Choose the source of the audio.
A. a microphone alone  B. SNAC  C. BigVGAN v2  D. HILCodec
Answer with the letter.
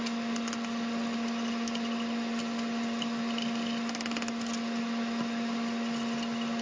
A